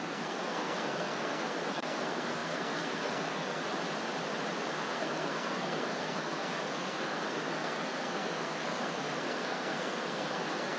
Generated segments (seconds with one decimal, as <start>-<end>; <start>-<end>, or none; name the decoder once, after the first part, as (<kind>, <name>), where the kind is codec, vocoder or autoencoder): 0.0-3.6 (codec, SNAC); 4.7-10.8